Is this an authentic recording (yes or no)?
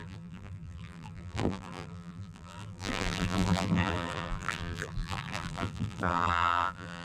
no